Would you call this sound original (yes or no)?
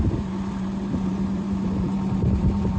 no